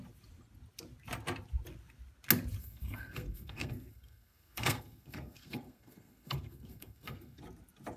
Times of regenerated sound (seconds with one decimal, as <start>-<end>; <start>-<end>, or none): 2.6-7.4